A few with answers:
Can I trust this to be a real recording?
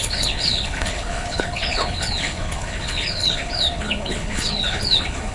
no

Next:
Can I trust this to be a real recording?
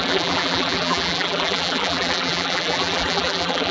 no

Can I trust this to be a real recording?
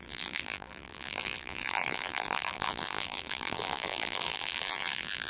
no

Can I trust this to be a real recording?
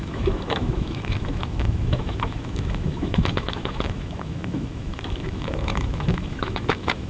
no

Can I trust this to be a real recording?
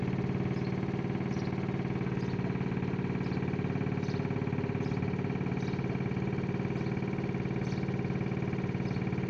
yes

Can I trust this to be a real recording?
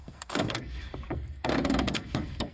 no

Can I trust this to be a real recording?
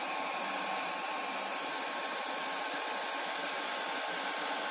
yes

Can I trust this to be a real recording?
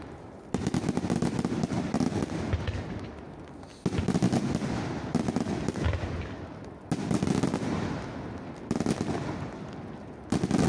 yes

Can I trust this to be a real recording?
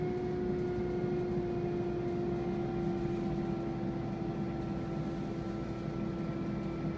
yes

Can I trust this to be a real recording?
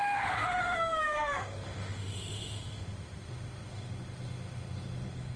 no